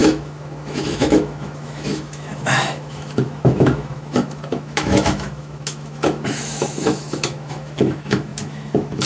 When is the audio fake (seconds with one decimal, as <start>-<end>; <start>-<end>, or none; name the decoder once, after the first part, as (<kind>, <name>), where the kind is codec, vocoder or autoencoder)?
0.0-9.1 (autoencoder, DAC-VAE)